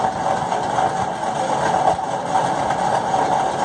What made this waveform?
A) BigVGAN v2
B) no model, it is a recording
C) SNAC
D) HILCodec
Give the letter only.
B